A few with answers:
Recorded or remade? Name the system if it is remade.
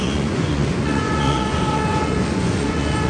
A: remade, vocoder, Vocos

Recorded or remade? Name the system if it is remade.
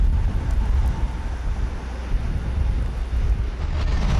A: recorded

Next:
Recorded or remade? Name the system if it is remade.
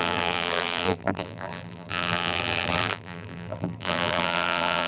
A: remade, vocoder, BigVGAN v2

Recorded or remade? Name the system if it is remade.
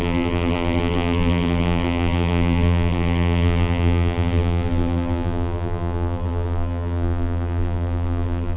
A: remade, vocoder, BigVGAN v2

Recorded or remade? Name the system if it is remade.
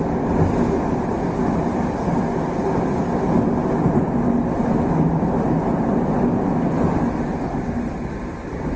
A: recorded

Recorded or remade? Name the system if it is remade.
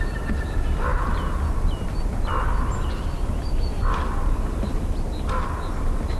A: recorded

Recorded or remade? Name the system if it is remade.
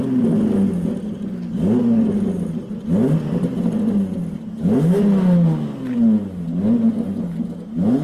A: recorded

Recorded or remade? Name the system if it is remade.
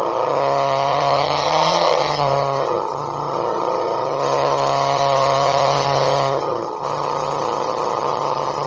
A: remade, vocoder, HiFi-GAN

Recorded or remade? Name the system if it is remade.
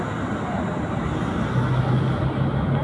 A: recorded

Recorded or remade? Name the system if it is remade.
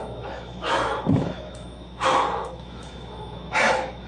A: remade, autoencoder, DAC-VAE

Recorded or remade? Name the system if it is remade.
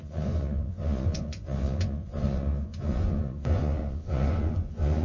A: remade, vocoder, Vocos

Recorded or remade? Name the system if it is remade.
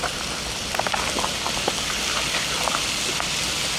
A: recorded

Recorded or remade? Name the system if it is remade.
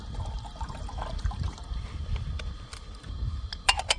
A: recorded